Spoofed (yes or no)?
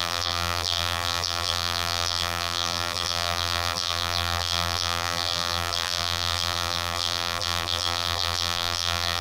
yes